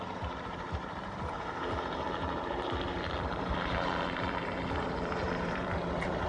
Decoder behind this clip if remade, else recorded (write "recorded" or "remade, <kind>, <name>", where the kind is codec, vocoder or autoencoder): remade, vocoder, BigVGAN v2